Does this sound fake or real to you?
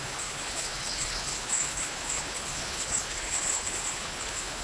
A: fake